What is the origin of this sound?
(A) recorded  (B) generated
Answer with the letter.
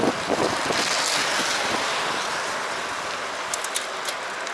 A